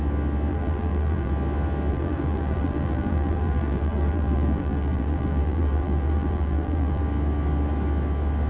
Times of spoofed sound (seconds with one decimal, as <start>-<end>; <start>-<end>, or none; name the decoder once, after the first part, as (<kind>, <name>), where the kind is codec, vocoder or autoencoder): 0.5-1.3 (vocoder, BigVGAN v2); 1.9-7.0